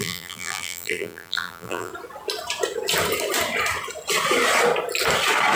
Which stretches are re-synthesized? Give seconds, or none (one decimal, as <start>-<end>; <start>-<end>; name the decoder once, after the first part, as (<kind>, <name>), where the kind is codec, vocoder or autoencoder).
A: 0.0-1.9 (vocoder, BigVGAN v2)